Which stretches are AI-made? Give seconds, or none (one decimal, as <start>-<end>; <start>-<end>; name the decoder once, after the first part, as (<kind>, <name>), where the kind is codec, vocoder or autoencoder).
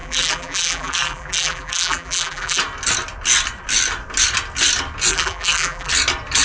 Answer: 0.0-2.6 (vocoder, BigVGAN v2); 5.1-5.9